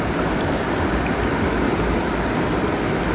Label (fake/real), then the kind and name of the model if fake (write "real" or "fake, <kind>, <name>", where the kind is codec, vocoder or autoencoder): real